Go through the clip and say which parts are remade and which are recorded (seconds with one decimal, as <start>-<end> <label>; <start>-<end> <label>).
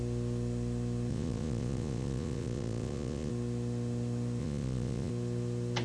0.0-1.1 recorded; 1.1-3.3 remade; 3.3-4.4 recorded; 4.4-5.1 remade; 5.1-5.8 recorded